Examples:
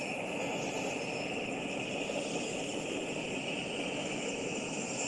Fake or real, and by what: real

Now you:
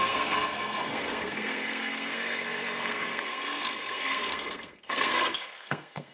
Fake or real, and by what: fake, codec, SNAC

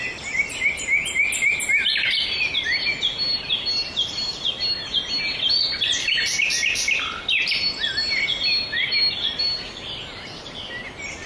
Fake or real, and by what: real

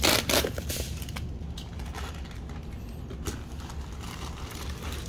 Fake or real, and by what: real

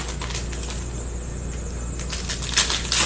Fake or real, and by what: real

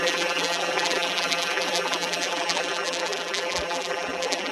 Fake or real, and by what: fake, vocoder, BigVGAN v2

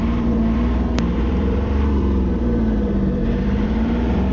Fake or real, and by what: fake, vocoder, BigVGAN v2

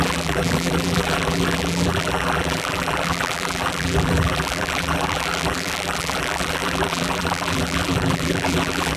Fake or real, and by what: fake, vocoder, BigVGAN v2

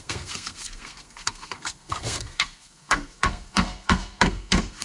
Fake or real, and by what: fake, codec, SNAC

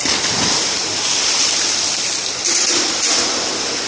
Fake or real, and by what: real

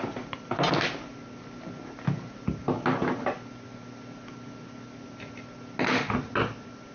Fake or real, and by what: real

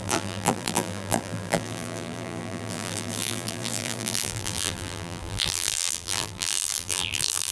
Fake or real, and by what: fake, vocoder, BigVGAN v2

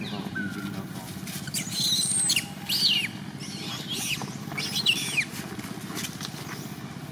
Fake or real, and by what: real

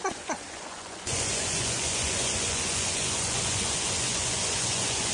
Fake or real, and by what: fake, vocoder, Vocos